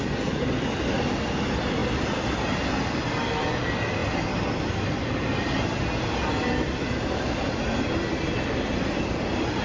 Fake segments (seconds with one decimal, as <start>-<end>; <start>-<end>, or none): none